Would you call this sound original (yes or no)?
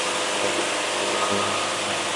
yes